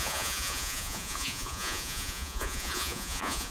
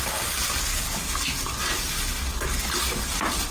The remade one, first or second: first